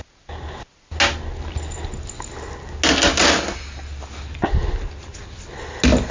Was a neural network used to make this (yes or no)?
no